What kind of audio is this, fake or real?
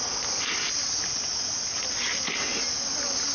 real